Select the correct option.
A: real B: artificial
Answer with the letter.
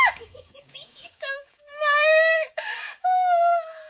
B